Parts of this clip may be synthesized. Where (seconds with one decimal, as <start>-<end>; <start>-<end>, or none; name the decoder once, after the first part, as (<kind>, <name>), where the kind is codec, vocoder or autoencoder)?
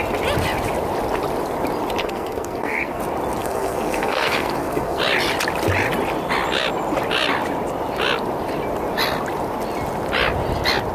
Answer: 2.0-3.0 (codec, SNAC); 3.4-5.0